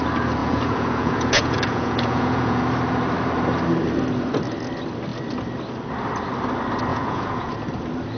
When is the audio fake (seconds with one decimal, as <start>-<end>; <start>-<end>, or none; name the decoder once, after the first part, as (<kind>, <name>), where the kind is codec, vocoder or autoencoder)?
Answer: 0.4-2.6 (vocoder, Vocos); 6.9-7.5